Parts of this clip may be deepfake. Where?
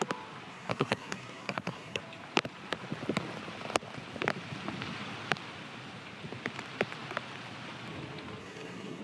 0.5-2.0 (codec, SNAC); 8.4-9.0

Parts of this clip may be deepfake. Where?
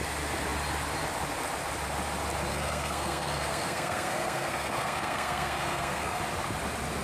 2.5-6.2 (codec, SNAC)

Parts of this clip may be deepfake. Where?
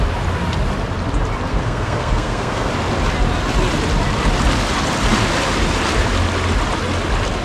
1.5-2.7 (codec, SNAC)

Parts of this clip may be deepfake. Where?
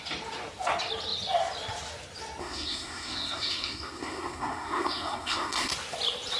2.4-5.7 (codec, SNAC)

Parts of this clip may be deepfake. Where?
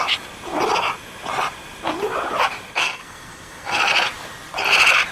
2.8-3.8 (codec, SNAC)